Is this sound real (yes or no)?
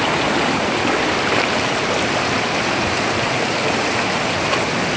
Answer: yes